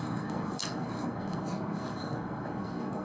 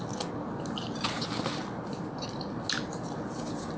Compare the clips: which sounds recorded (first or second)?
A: second